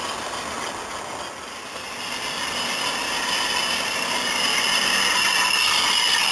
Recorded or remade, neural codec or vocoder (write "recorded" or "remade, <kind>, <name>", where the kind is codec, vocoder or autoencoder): recorded